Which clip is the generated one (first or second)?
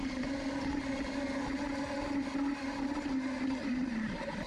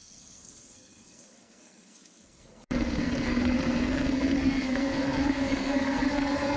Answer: second